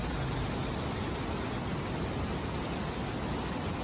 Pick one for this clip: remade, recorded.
recorded